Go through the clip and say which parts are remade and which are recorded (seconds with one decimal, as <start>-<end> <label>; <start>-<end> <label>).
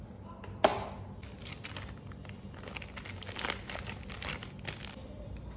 0.0-5.6 recorded